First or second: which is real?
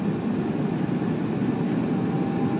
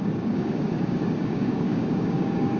first